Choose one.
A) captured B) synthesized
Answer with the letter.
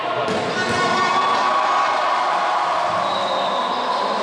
A